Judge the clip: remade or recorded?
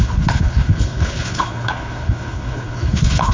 remade